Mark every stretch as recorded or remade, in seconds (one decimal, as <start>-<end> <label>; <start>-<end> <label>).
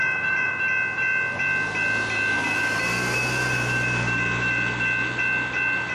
0.0-0.5 remade; 0.5-5.9 recorded